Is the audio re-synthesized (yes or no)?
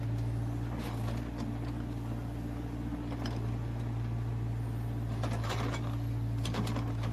no